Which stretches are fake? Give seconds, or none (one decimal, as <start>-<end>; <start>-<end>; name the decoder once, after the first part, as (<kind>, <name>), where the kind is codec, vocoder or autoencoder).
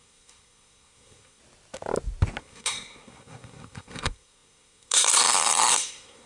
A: 0.0-1.4 (codec, SNAC); 2.4-6.3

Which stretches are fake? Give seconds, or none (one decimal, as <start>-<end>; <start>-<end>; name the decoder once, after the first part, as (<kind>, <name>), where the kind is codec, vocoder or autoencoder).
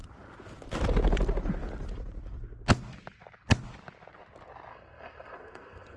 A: 4.7-6.0 (codec, SNAC)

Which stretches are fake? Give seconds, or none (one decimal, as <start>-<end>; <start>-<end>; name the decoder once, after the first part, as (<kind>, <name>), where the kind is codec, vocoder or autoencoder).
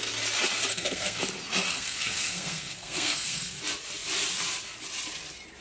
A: 0.7-1.2 (codec, SNAC); 1.7-3.6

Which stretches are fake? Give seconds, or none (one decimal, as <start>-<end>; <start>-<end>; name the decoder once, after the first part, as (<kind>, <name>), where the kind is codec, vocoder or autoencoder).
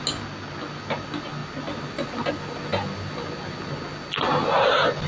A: none